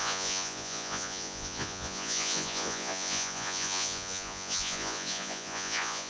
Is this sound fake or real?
fake